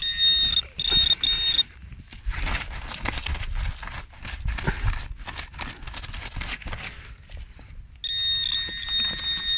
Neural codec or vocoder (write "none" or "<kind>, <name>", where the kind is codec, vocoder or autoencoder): none